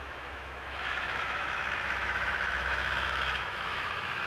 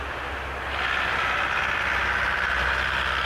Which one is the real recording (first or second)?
second